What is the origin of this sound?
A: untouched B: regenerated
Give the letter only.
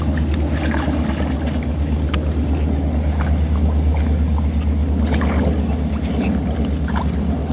A